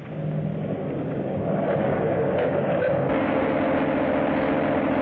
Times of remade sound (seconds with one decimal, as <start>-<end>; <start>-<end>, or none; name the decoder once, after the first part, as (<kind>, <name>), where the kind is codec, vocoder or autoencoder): 0.5-3.5 (codec, DAC)